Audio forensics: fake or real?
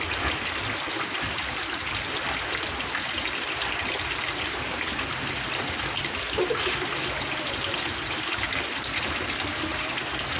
real